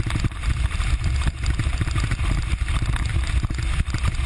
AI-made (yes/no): no